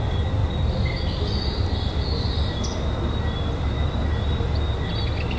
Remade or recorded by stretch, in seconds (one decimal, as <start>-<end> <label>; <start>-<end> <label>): 0.0-5.4 recorded